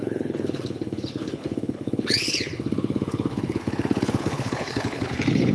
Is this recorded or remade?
remade